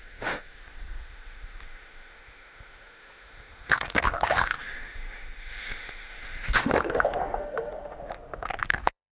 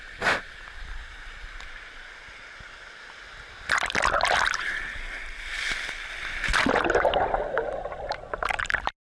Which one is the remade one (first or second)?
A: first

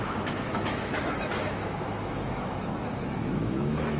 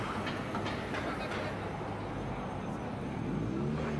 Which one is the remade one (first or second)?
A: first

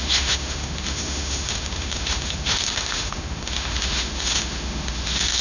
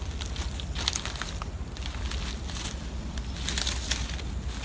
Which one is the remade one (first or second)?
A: first